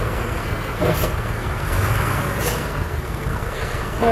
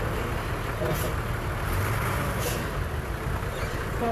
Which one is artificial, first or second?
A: first